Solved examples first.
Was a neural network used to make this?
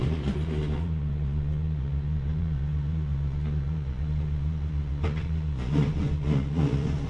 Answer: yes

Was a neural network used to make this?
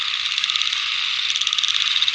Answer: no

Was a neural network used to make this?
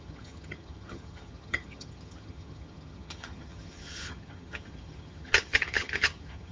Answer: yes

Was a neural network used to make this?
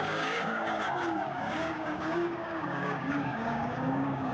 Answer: yes